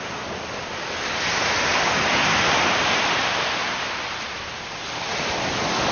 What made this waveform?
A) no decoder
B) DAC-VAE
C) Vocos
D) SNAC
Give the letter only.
A